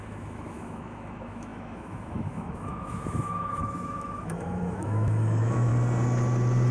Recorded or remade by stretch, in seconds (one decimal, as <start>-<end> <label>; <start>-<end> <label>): 0.0-5.7 remade; 5.7-6.7 recorded